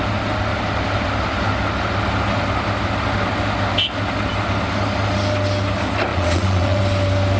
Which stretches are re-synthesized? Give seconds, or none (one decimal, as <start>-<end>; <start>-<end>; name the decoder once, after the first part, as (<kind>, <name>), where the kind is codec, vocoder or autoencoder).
6.1-6.8 (vocoder, WaveNeXt)